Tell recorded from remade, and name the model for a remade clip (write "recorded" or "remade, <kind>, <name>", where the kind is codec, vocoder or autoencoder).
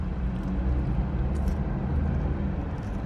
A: recorded